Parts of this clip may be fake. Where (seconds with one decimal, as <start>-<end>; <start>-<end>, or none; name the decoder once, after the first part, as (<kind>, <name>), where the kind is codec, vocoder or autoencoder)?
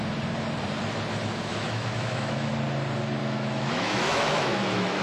1.5-2.5 (autoencoder, DAC-VAE); 3.2-5.0